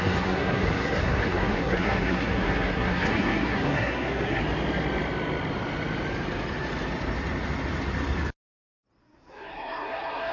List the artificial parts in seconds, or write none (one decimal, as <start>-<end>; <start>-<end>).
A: 0.0-4.4; 9.0-10.3